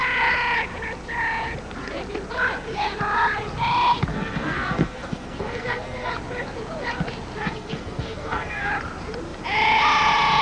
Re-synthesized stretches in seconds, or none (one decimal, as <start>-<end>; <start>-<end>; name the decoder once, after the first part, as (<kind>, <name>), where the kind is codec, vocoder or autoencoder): 4.1-6.1 (codec, SNAC); 7.4-8.7